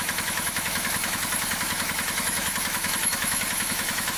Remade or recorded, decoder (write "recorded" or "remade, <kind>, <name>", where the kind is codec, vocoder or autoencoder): remade, autoencoder, DAC-VAE